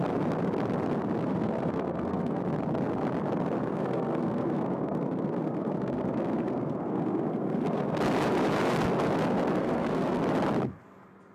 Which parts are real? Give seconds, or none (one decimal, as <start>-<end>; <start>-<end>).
0.0-1.2; 2.4-3.7; 8.0-9.6; 10.2-11.3